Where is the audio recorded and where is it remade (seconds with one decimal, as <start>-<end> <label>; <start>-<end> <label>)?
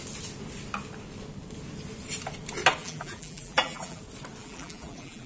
0.0-2.8 recorded; 2.8-4.0 remade; 4.0-4.4 recorded; 4.4-5.3 remade